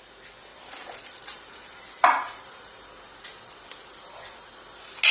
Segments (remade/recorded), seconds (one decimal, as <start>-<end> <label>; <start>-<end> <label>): 0.0-0.5 recorded; 0.5-2.8 remade; 2.8-5.1 recorded